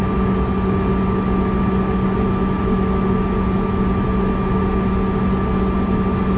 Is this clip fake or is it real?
real